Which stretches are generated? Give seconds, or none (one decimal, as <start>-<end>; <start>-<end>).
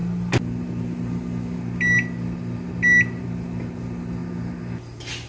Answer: none